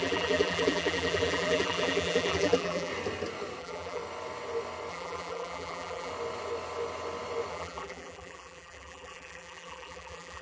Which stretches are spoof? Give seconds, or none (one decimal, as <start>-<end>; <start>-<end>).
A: 0.0-2.9; 3.6-4.0; 4.9-6.1; 7.5-10.4